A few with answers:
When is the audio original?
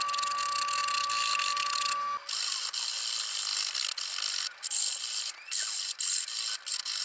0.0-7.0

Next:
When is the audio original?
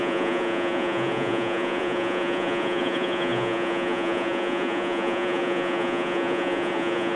none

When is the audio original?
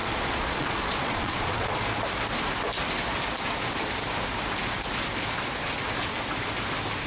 1.8-7.1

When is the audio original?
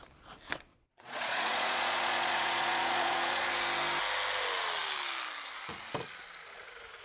0.0-0.7; 3.5-7.0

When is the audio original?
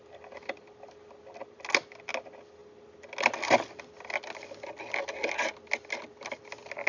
0.0-6.9